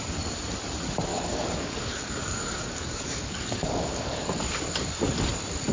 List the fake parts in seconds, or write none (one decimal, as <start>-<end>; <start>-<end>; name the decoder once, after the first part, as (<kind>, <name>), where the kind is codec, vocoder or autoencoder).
1.1-4.5 (codec, DAC)